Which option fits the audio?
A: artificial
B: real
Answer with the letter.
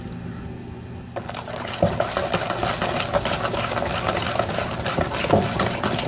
B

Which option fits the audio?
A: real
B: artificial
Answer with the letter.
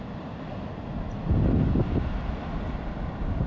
A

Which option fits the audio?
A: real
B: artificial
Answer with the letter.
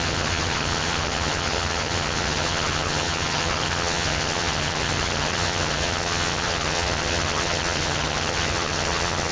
B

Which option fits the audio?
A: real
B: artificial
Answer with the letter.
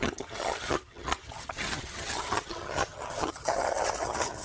B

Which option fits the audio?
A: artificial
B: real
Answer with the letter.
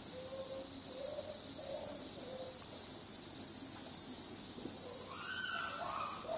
B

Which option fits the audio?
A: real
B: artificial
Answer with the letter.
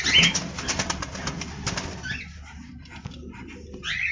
A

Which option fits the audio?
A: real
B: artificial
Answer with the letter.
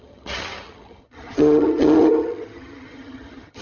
B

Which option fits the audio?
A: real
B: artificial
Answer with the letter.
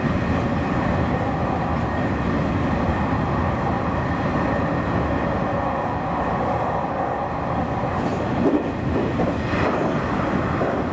A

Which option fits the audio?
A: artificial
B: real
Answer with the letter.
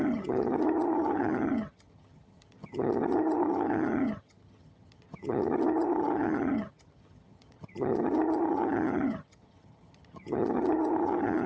A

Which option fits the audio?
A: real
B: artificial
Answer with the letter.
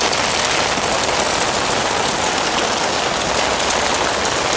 A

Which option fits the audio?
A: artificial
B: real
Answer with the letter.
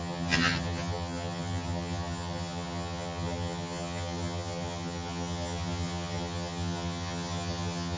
A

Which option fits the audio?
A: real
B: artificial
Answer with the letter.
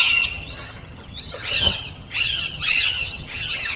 B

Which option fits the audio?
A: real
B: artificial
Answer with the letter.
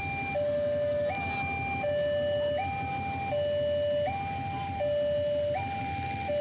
A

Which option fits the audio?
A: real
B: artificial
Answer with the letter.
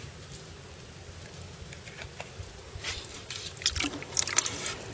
A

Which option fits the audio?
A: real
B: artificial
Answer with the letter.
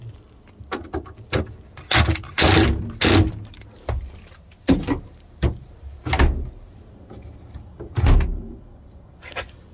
A